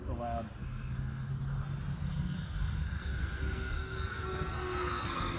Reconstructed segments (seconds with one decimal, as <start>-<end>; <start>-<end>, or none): 0.6-1.3; 2.0-5.4